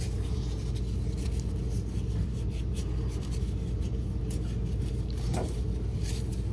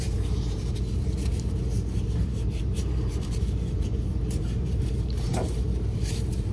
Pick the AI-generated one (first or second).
second